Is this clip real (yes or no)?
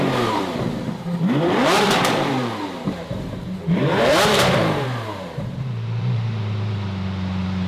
no